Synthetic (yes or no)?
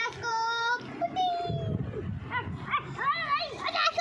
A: no